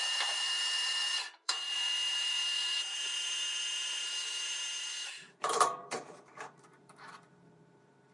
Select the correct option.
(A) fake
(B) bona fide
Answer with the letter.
A